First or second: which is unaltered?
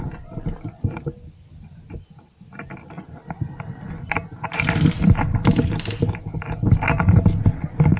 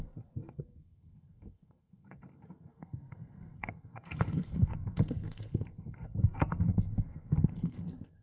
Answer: first